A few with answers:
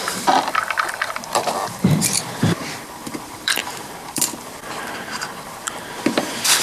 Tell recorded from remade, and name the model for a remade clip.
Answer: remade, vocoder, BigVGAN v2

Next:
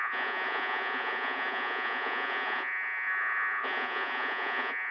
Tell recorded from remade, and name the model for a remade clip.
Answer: remade, vocoder, Vocos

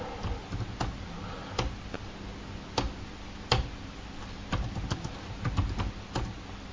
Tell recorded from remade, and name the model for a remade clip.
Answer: recorded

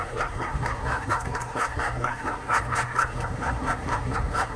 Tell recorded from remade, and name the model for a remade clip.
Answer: remade, codec, SNAC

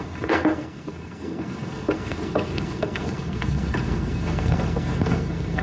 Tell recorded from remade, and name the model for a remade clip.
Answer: remade, codec, SNAC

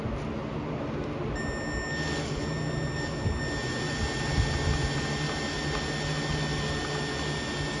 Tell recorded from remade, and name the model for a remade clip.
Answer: recorded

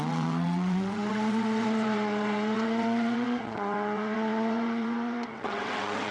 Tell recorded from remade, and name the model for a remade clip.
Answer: remade, vocoder, WaveNeXt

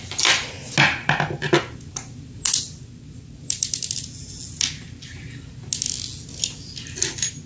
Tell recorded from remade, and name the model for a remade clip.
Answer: recorded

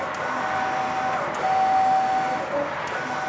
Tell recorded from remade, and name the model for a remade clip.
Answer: recorded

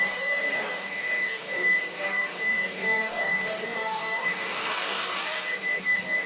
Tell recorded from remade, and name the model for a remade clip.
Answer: remade, codec, DAC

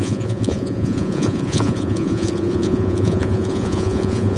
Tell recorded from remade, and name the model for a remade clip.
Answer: remade, vocoder, Vocos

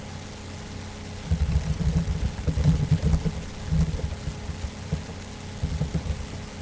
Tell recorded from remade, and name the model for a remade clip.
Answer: recorded